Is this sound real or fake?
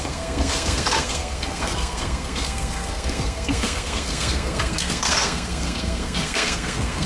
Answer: fake